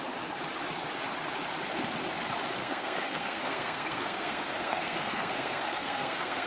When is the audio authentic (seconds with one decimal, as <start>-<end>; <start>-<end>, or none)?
0.0-2.6

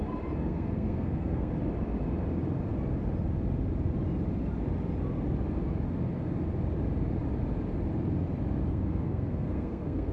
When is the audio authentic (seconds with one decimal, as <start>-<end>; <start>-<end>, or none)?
0.0-0.5; 1.5-8.7

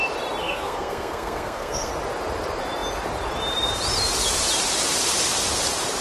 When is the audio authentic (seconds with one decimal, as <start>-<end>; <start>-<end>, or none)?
0.0-0.4; 1.9-6.0

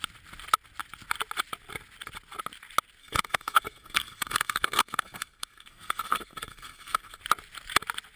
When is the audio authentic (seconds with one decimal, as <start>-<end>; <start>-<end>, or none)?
0.0-3.0; 7.2-8.2